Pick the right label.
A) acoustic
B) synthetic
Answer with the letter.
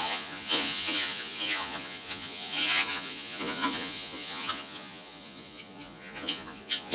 B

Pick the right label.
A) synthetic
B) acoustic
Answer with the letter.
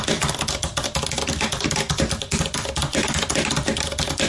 B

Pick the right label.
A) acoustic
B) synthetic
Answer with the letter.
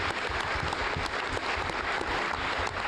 A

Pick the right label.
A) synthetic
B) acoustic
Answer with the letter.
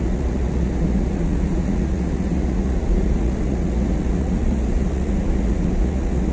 A